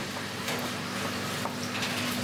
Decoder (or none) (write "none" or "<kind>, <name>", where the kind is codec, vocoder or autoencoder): none